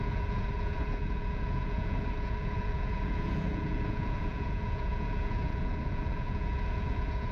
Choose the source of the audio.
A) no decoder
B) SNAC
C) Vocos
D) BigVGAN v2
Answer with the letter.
C